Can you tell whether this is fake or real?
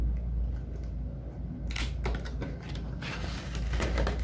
real